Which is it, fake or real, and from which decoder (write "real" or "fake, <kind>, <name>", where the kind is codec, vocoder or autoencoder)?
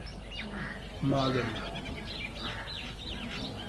real